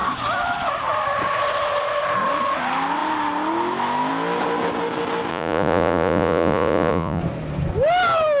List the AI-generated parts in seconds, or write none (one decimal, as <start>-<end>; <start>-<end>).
5.3-7.2